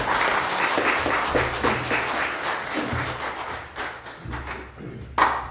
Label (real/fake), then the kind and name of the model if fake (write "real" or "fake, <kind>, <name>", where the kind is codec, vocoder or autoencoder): real